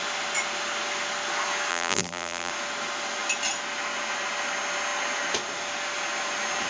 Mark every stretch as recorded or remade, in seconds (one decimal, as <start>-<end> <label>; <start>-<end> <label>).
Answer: 0.0-1.7 recorded; 1.7-2.5 remade; 2.5-6.7 recorded